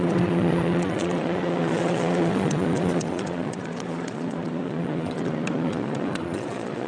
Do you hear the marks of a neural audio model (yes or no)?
yes